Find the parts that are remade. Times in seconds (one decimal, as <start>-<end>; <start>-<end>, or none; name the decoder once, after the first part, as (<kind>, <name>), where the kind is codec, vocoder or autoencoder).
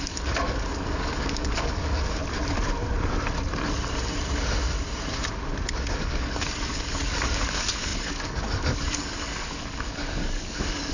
0.0-2.2 (codec, DAC); 5.9-10.9